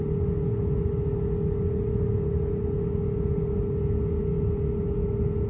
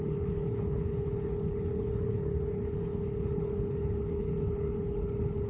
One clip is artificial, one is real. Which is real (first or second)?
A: first